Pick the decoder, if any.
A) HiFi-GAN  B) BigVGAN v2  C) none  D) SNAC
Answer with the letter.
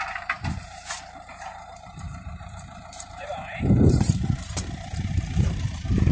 B